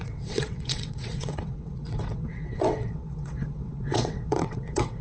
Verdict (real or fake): fake